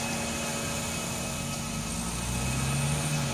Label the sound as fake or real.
real